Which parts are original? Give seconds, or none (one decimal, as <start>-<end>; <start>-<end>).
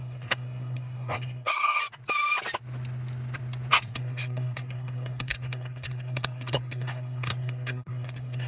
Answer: 1.8-3.7